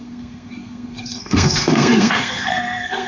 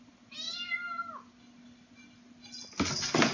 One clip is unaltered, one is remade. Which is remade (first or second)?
first